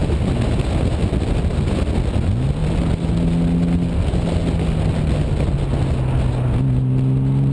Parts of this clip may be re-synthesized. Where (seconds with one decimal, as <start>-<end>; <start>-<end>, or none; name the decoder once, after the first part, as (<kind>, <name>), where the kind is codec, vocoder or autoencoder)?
none